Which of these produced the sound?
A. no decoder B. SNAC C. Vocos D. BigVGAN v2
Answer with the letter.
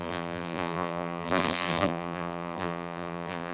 D